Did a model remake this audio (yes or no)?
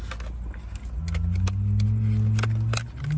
no